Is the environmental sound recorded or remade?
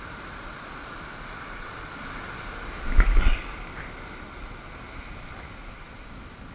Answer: recorded